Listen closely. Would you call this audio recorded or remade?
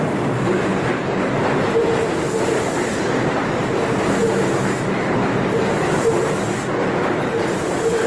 recorded